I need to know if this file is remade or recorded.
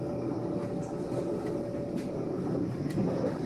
recorded